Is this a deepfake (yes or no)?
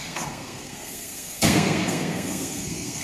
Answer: yes